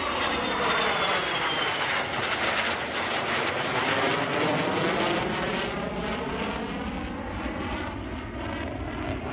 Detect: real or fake real